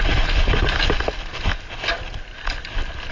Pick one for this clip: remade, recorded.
recorded